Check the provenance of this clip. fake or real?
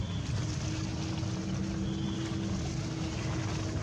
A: real